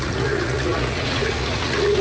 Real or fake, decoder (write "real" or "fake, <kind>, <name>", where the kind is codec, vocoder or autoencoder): fake, vocoder, Vocos